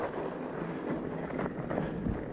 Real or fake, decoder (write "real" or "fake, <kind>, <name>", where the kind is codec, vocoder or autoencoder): real